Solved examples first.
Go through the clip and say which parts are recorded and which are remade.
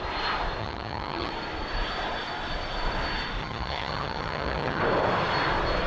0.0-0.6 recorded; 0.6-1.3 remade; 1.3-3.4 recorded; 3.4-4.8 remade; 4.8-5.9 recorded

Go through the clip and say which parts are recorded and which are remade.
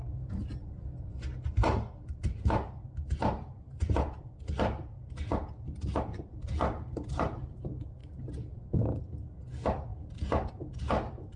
0.0-8.0 recorded; 8.0-9.0 remade; 9.0-9.9 recorded; 9.9-10.5 remade; 10.5-11.4 recorded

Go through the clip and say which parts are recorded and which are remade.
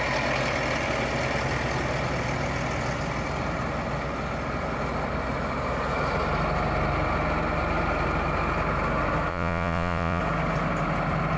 0.0-9.3 recorded; 9.3-10.2 remade; 10.2-11.4 recorded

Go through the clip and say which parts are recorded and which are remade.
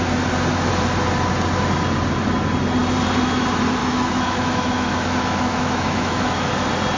0.0-3.8 recorded; 3.8-6.5 remade; 6.5-7.0 recorded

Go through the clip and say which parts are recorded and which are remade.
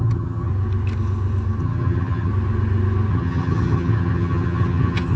0.0-0.5 remade; 0.5-1.6 recorded; 1.6-2.3 remade; 2.3-3.1 recorded; 3.1-5.2 remade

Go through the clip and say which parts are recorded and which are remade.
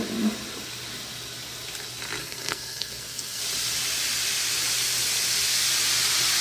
0.0-2.2 recorded; 2.2-3.4 remade; 3.4-6.4 recorded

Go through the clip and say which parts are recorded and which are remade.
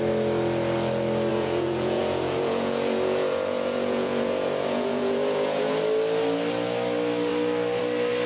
0.0-1.3 recorded; 1.3-5.8 remade; 5.8-8.3 recorded